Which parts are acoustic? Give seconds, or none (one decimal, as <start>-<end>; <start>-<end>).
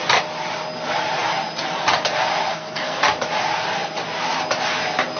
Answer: 0.0-2.5; 3.0-5.2